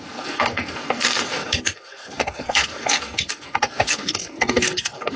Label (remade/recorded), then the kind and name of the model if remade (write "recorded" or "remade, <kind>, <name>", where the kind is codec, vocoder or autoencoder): remade, codec, SNAC